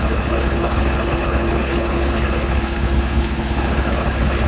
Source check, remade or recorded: remade